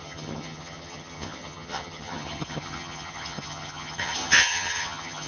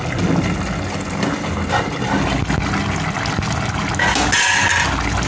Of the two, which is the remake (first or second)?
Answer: first